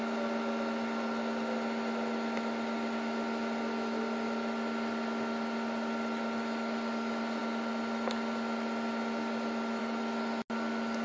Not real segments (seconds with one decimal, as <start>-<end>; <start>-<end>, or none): none